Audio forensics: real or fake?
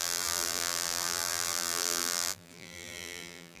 fake